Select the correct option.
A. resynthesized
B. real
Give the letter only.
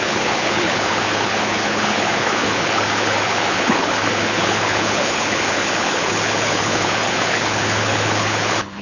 A